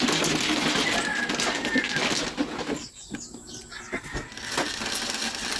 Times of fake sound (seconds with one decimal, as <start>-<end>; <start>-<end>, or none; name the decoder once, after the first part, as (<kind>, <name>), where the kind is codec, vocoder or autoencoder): none